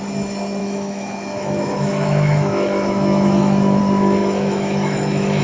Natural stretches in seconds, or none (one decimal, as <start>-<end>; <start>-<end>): 0.0-0.6; 3.8-4.2